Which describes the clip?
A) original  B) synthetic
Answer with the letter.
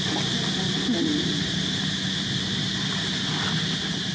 A